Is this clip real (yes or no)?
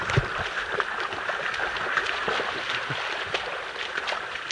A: yes